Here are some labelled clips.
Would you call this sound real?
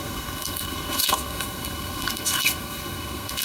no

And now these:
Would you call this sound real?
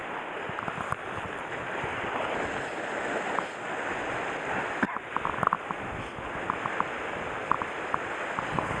yes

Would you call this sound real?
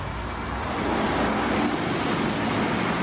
yes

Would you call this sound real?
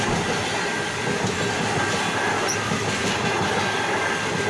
yes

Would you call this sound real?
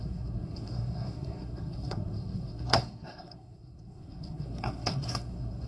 no